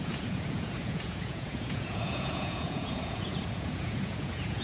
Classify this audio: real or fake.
fake